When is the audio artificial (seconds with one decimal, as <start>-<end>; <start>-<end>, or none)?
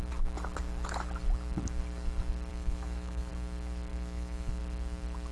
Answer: 2.5-3.3; 3.9-4.6